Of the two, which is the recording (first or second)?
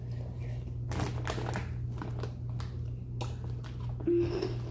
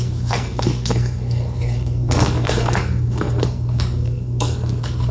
first